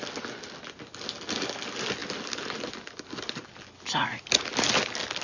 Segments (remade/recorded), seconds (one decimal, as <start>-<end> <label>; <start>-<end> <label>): 0.0-5.2 recorded